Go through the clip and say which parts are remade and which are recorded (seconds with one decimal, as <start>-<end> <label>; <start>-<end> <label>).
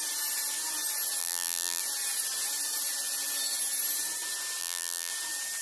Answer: 0.0-1.2 recorded; 1.2-1.8 remade; 1.8-4.6 recorded; 4.6-5.1 remade; 5.1-5.6 recorded